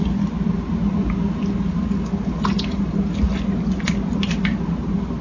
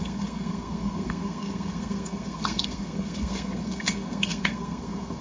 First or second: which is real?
first